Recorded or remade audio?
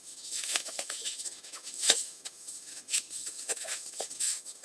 remade